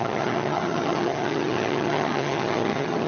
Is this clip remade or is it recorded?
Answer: remade